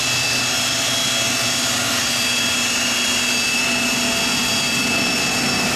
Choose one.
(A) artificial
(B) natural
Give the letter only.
B